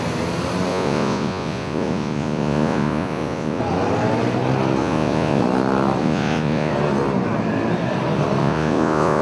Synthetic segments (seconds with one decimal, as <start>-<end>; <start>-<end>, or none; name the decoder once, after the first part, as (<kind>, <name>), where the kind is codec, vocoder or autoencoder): 0.7-3.6 (vocoder, Vocos); 4.8-5.4; 6.0-6.7; 8.4-9.2

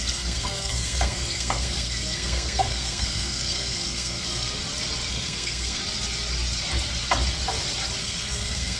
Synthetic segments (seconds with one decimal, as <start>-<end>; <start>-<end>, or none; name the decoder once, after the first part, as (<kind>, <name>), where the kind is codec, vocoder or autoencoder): 0.0-4.6 (codec, SNAC); 5.1-5.8; 8.0-8.8

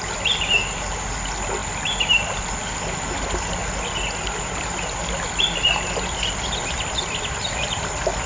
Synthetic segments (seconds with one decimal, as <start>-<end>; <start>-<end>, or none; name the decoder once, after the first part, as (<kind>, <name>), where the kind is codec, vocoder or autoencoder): none

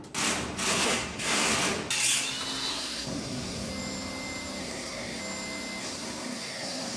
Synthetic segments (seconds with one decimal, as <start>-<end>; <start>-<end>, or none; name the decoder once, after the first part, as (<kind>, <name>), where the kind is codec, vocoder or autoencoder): 0.7-1.5 (codec, SNAC); 2.7-3.7; 4.6-5.2; 5.8-7.0

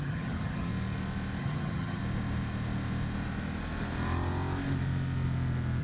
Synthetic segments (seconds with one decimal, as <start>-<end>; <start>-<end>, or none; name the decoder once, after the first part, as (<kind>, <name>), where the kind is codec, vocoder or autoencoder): 0.0-0.7 (vocoder, HiFi-GAN); 1.4-2.0

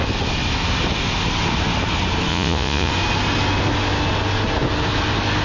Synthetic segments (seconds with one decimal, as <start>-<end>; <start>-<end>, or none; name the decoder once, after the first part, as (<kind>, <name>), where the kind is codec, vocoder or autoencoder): 2.3-2.9 (vocoder, Vocos)

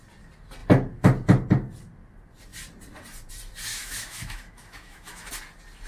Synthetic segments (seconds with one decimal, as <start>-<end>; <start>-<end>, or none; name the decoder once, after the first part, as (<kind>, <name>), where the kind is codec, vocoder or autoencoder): 3.7-5.3 (autoencoder, DAC-VAE)

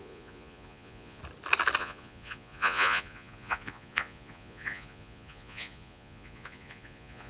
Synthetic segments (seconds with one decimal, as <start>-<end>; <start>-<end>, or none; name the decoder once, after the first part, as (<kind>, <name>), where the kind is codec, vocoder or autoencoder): 0.0-1.2 (vocoder, Vocos); 1.8-7.3